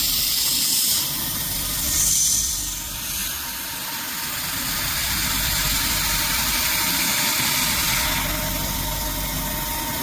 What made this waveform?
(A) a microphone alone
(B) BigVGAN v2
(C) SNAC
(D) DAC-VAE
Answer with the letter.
A